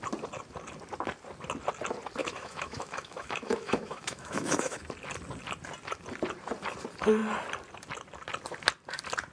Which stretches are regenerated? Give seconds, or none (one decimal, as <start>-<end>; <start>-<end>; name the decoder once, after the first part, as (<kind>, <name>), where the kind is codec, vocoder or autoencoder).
2.2-4.8 (autoencoder, DAC-VAE)